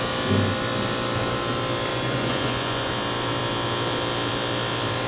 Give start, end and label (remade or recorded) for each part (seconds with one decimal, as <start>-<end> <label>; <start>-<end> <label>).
0.0-1.9 recorded; 1.9-2.9 remade; 2.9-5.1 recorded